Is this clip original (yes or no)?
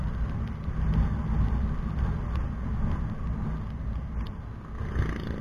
yes